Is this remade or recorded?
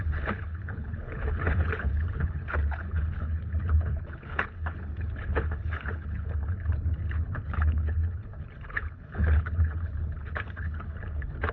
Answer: remade